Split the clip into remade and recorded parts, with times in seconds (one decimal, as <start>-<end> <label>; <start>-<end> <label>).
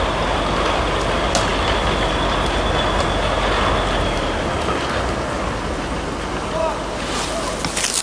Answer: 0.0-8.0 recorded